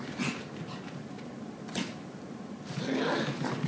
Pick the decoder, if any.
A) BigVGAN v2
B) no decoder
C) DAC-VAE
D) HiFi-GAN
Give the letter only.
B